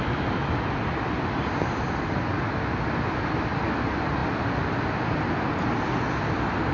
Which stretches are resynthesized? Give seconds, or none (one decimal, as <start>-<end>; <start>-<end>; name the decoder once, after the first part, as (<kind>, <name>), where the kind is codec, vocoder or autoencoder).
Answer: none